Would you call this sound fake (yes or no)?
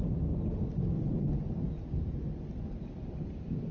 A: no